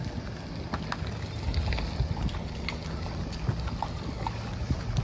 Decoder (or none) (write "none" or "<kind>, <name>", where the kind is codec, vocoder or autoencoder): none